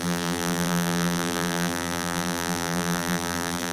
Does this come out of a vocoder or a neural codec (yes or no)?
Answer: yes